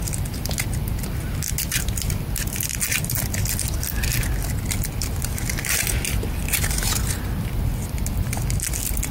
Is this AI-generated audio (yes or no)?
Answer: no